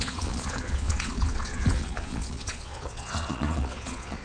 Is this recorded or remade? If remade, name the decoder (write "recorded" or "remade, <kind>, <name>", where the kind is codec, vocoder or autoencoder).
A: remade, vocoder, Vocos